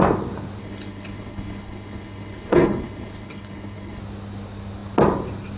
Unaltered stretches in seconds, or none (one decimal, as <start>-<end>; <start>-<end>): 0.0-0.6; 4.0-5.6